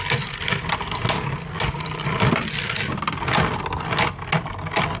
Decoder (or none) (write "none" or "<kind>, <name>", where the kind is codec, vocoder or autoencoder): none